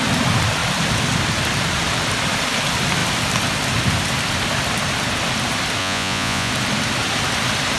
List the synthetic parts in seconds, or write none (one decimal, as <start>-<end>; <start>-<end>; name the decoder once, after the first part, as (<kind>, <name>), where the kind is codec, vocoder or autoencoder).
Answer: 5.8-6.5 (vocoder, Vocos)